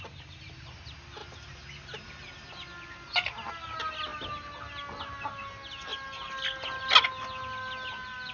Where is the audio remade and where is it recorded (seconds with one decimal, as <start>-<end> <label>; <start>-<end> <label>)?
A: 0.0-8.3 recorded